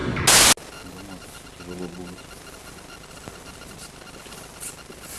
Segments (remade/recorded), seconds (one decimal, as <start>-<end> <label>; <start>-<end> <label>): 0.0-5.2 recorded